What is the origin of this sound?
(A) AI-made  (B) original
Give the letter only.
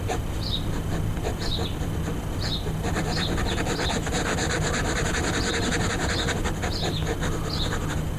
B